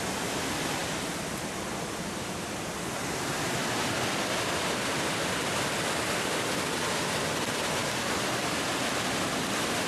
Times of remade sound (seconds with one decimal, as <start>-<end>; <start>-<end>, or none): none